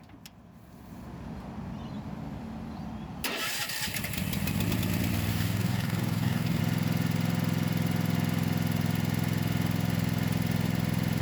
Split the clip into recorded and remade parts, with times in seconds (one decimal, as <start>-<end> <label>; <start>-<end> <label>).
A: 0.0-5.3 recorded; 5.3-6.6 remade; 6.6-11.2 recorded